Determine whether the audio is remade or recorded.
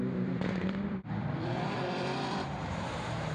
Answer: remade